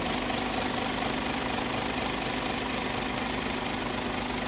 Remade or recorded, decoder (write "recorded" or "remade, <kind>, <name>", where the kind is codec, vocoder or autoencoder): recorded